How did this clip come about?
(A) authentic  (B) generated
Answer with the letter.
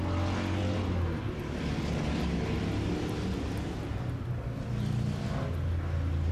A